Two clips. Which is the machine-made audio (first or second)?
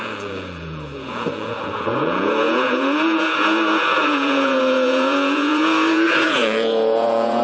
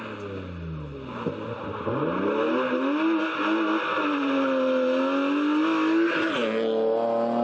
first